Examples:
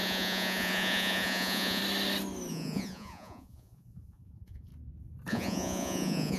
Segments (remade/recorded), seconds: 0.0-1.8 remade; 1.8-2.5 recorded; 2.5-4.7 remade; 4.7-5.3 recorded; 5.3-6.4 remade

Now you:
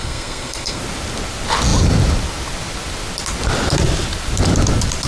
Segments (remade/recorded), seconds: 0.0-0.8 remade; 0.8-5.1 recorded

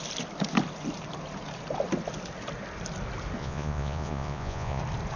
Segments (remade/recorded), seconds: 0.0-3.4 recorded; 3.4-4.8 remade; 4.8-5.2 recorded